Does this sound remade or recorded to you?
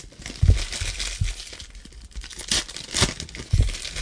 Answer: recorded